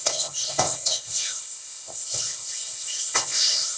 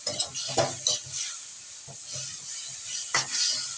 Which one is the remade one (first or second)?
first